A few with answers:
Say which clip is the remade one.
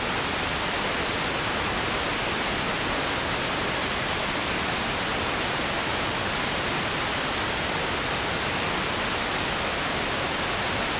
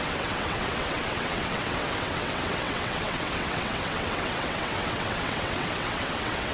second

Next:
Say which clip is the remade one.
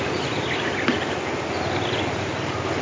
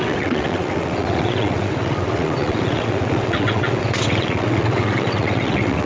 second